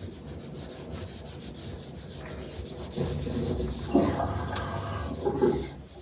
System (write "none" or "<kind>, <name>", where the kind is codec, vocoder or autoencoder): none